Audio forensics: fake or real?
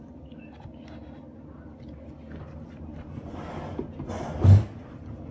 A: real